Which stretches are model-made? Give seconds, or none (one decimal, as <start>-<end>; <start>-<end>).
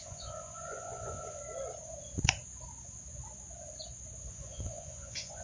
0.0-1.4; 4.3-5.4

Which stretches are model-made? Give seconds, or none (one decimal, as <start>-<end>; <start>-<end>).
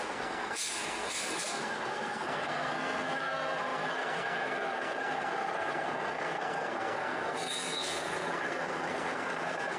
0.0-9.8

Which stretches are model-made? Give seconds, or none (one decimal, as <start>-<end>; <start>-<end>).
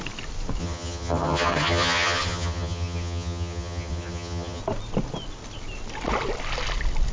0.6-4.6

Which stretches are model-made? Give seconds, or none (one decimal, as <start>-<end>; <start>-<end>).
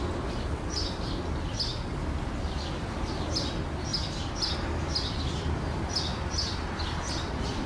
none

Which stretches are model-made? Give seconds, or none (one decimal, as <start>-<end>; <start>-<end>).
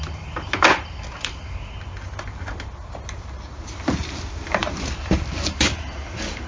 none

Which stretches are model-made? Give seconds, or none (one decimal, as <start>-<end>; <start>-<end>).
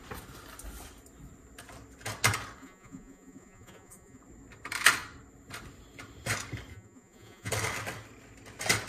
2.6-4.2; 6.7-7.5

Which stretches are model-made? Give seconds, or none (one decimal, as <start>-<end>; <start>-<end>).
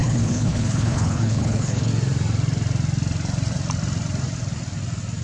0.0-1.9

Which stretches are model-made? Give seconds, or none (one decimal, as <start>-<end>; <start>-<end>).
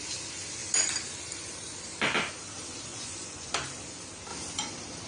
2.9-3.5